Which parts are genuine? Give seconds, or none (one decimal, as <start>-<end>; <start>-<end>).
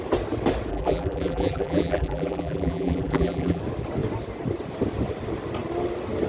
0.0-0.7; 3.6-6.3